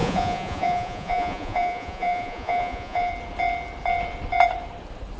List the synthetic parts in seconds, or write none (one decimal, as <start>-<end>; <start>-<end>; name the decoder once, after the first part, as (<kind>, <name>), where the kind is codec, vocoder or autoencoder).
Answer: 0.0-3.1 (vocoder, Vocos)